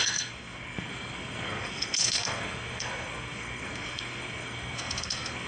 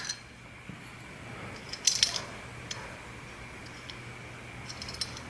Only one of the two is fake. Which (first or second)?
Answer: first